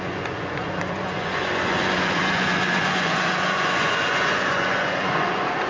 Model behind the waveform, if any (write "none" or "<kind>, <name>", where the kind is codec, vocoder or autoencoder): vocoder, Vocos